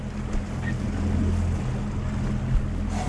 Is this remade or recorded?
recorded